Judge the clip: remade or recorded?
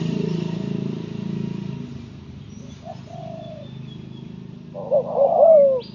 recorded